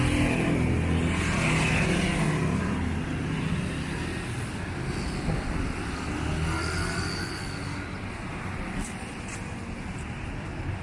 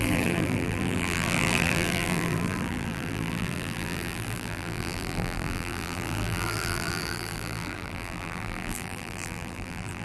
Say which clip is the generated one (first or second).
second